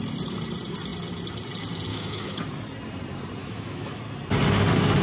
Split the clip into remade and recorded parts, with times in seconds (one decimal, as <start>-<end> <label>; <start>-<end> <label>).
0.0-1.9 recorded; 1.9-2.4 remade; 2.4-3.4 recorded; 3.4-4.0 remade; 4.0-5.0 recorded